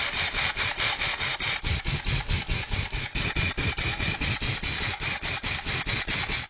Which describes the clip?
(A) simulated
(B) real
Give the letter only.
B